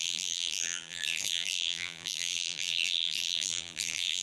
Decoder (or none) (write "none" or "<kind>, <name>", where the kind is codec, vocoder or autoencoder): vocoder, BigVGAN v2